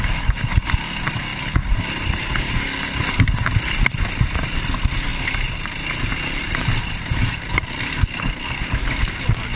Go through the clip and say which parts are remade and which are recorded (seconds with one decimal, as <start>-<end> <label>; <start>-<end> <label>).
0.0-9.6 recorded